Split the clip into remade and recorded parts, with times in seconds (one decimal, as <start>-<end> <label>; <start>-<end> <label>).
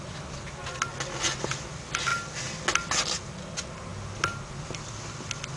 0.0-5.6 recorded